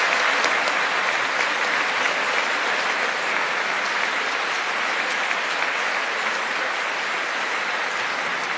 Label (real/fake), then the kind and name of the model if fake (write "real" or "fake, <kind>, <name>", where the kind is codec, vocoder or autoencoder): real